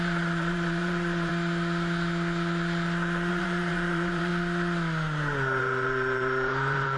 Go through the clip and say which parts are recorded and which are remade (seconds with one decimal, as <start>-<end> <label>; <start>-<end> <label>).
0.0-1.3 remade; 1.3-3.3 recorded; 3.3-4.3 remade; 4.3-5.6 recorded; 5.6-7.0 remade